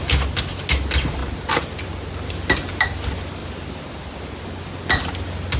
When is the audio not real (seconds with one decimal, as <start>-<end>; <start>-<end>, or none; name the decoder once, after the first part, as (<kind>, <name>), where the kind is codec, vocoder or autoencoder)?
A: 3.4-4.0 (vocoder, BigVGAN v2)